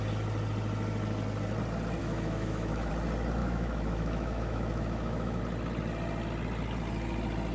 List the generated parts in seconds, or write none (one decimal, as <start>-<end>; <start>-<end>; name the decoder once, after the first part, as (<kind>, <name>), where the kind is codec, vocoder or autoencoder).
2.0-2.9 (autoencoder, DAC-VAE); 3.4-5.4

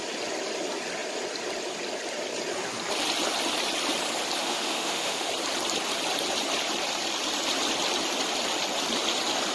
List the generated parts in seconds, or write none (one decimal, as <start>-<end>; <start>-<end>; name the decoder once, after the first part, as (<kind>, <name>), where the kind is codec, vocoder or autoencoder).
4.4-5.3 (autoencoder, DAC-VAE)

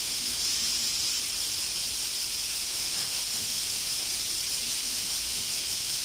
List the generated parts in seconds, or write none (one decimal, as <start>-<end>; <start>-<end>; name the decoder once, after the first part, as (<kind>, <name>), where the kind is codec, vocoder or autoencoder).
0.0-0.4 (autoencoder, DAC-VAE); 2.4-4.1; 4.8-6.0

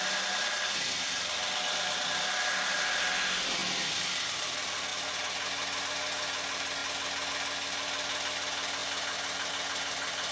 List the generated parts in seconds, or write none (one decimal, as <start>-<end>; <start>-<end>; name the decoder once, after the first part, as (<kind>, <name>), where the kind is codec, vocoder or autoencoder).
none